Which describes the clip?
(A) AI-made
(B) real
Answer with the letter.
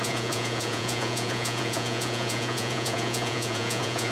A